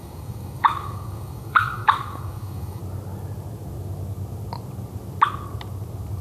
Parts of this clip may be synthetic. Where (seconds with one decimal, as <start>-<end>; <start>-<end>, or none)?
0.0-2.8